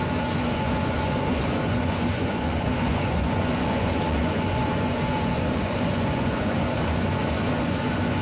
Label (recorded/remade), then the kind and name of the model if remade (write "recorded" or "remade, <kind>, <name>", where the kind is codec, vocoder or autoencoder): remade, vocoder, Vocos